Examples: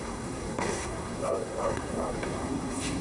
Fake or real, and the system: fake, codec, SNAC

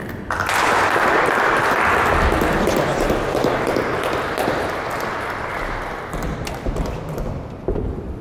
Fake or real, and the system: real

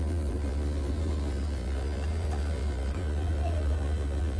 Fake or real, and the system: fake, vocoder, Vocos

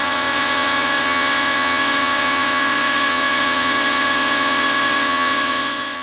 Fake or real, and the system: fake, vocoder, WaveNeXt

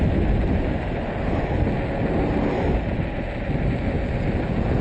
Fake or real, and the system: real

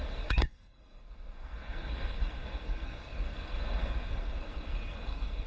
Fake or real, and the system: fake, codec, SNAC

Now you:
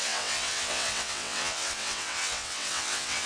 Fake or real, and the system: fake, vocoder, WaveNeXt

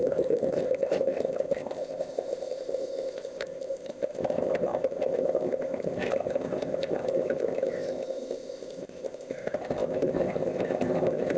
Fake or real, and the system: fake, codec, ZipCodec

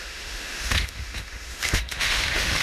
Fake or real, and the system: fake, autoencoder, DAC-VAE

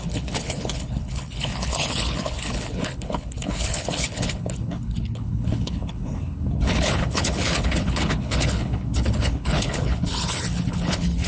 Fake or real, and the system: fake, codec, HILCodec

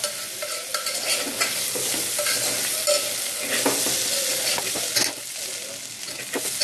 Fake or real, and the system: real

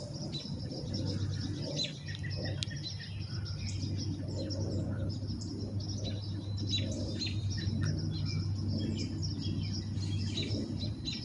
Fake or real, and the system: real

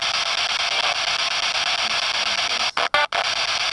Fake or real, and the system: real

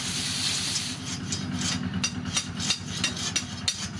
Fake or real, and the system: real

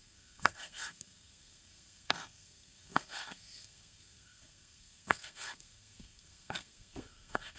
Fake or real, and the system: fake, codec, SNAC